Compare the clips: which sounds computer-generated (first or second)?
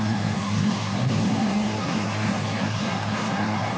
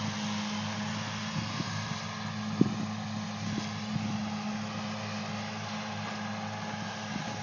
first